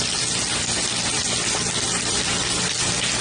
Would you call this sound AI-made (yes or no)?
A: no